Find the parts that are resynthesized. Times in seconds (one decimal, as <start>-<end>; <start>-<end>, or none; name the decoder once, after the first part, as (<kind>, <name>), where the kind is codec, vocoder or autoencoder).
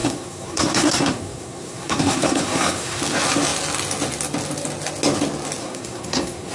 0.0-3.0 (codec, SNAC); 5.6-6.5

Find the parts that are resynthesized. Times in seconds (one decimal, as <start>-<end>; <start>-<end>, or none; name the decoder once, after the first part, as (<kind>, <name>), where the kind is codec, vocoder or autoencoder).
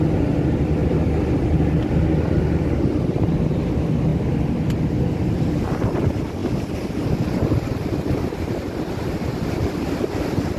none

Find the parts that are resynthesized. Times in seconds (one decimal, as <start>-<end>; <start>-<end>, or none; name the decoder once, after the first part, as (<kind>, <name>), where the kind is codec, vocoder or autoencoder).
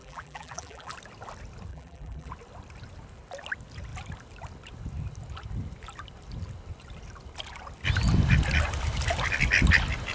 0.0-0.9 (vocoder, BigVGAN v2); 1.7-2.3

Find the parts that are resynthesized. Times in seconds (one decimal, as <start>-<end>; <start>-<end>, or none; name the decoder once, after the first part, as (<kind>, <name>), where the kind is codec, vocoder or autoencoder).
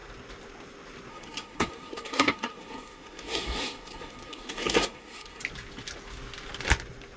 1.1-5.4 (codec, SNAC)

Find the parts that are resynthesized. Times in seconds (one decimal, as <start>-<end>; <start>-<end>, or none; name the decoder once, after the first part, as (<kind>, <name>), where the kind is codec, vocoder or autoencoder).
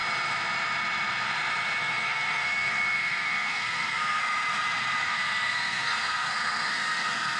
1.8-4.2 (codec, SNAC); 5.0-7.4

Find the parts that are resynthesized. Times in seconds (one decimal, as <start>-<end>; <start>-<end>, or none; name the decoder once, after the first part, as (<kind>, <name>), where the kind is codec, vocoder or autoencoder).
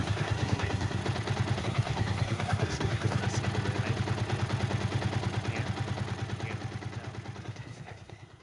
0.0-1.0 (codec, SNAC); 1.6-3.2; 7.4-8.4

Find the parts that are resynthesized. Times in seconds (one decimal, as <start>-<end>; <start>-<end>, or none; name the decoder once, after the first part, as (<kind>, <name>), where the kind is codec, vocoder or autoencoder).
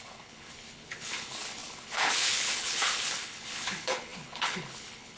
0.0-5.2 (codec, HILCodec)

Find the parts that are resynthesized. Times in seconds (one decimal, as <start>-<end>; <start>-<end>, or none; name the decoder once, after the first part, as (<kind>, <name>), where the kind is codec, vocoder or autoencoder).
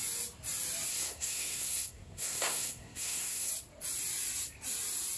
0.9-3.5 (codec, SNAC)